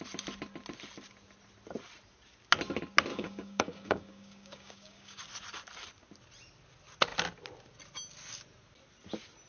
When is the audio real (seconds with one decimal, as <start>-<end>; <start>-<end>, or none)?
0.0-3.1; 5.2-9.5